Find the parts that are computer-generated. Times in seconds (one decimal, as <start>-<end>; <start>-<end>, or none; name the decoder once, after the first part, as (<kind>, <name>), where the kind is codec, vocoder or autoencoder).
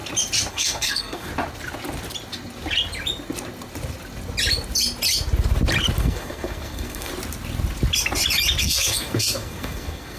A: 0.5-1.3 (codec, SNAC); 6.0-7.1; 8.6-10.2